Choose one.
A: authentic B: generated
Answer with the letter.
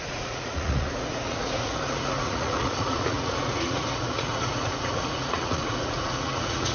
B